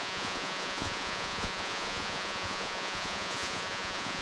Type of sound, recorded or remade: remade